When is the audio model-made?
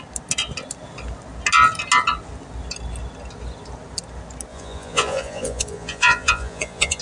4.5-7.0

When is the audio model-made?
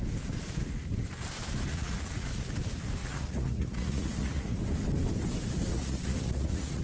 1.7-2.3; 3.0-4.6; 5.7-6.8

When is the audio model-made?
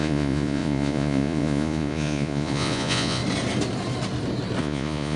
0.0-3.2; 4.6-5.2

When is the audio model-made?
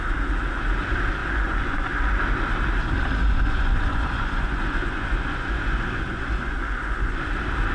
1.2-2.1; 3.2-7.3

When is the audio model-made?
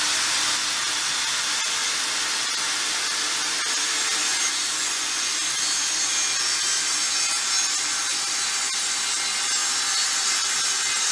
4.3-5.3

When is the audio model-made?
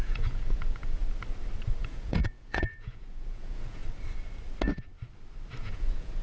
0.0-1.0; 1.8-3.8; 5.6-6.2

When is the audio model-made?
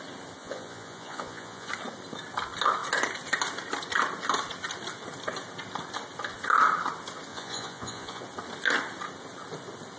0.4-1.7; 7.3-8.2